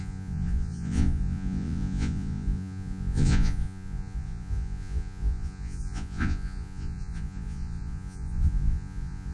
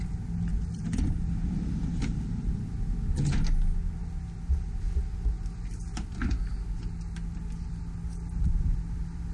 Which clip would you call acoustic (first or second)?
second